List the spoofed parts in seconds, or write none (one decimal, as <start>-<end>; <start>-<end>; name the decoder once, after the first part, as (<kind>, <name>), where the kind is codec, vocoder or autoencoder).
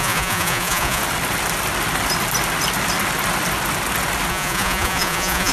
0.0-1.0 (vocoder, Vocos); 4.3-5.5